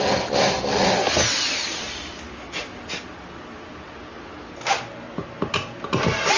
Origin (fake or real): real